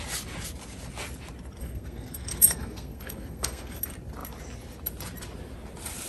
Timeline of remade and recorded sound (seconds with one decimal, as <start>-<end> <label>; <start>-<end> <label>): 0.0-1.6 recorded; 1.6-3.8 remade; 3.8-6.1 recorded